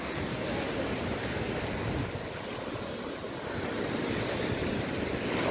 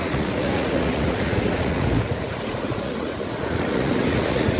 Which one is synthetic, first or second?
second